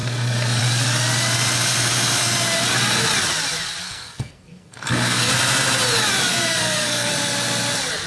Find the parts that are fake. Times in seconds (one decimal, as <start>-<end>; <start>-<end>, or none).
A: 0.0-0.6; 3.8-5.3; 6.3-7.1